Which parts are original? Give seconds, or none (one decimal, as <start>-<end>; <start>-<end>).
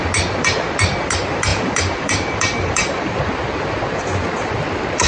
0.0-1.5; 3.2-5.1